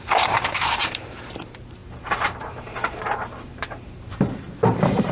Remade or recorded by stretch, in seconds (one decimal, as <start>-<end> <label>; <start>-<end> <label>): 0.0-5.1 remade